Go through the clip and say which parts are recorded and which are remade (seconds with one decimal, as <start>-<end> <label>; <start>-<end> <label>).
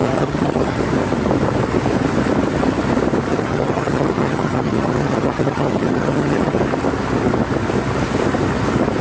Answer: 0.0-0.8 remade; 0.8-3.3 recorded; 3.3-6.6 remade; 6.6-9.0 recorded